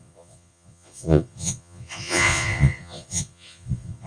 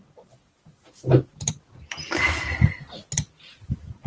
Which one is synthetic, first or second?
first